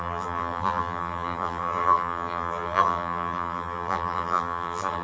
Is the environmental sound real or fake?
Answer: fake